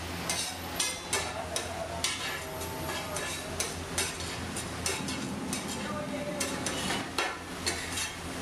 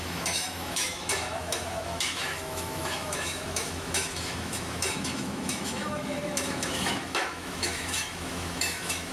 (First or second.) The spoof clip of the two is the second